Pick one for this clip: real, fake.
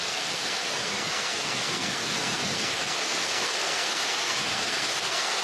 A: fake